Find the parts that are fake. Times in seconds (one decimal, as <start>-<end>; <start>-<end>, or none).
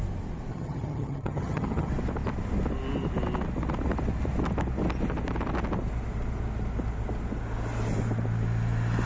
0.5-1.9